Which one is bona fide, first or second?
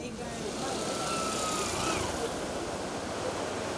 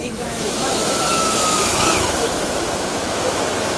first